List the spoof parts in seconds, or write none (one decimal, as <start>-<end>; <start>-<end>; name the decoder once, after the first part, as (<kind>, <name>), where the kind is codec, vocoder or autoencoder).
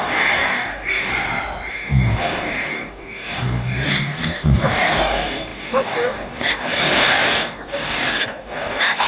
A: 0.0-1.1 (codec, DAC); 1.7-9.1